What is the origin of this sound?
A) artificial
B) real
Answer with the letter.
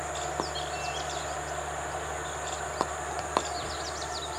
B